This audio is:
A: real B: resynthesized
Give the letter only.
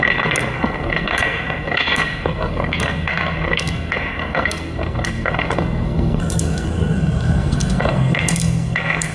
B